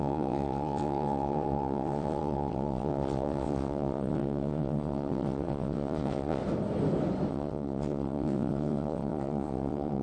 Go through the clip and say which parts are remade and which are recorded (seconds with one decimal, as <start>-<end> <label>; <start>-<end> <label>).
0.0-6.4 remade; 6.4-7.3 recorded; 7.3-10.0 remade